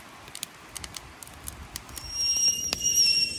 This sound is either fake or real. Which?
real